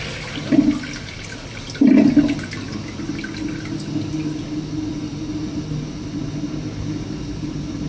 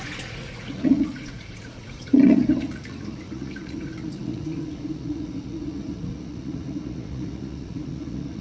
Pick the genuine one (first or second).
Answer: first